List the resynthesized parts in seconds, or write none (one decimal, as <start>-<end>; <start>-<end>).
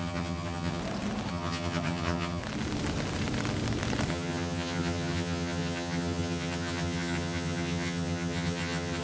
0.0-0.8; 1.3-2.4; 4.1-9.0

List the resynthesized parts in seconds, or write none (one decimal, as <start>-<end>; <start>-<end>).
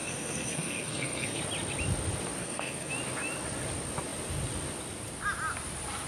0.0-1.4; 2.4-2.9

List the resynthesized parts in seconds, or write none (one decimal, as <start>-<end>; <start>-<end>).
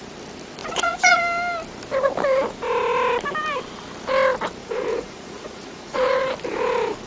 0.6-1.2; 4.6-6.2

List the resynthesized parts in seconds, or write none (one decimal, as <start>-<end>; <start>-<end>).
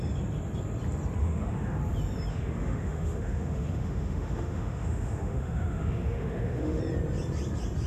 1.2-1.8; 2.3-6.8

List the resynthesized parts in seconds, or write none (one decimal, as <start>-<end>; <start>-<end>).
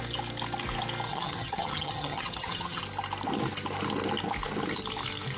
1.1-2.8